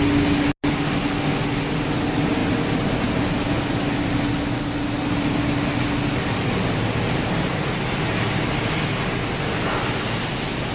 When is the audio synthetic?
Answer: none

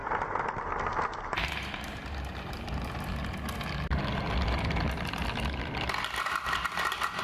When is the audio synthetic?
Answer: 1.1-3.3 (vocoder, BigVGAN v2)

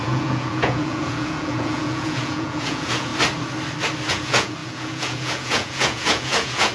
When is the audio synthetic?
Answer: 0.0-3.1 (vocoder, Vocos); 4.1-6.7

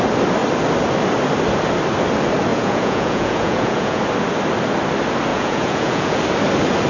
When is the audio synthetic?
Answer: 2.5-4.0 (vocoder, Vocos); 5.3-6.2

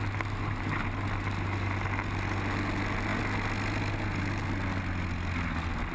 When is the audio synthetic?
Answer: none

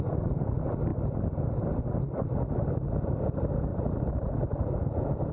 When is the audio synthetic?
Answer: 3.7-5.3 (vocoder, BigVGAN v2)

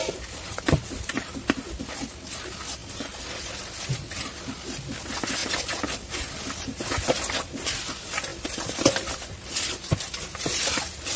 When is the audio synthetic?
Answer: 2.8-3.5 (vocoder, BigVGAN v2); 8.3-8.9